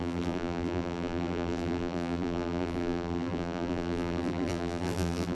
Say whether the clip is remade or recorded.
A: remade